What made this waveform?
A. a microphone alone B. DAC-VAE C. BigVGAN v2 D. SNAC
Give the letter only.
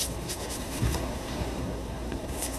D